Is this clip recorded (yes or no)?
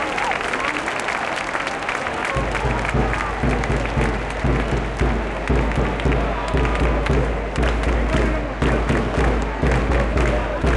yes